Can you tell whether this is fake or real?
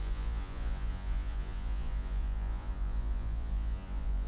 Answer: fake